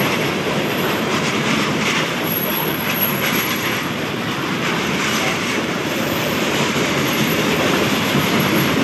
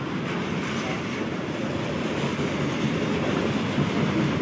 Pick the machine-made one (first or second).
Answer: first